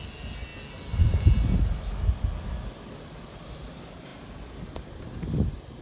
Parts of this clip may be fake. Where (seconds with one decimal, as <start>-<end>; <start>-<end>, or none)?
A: none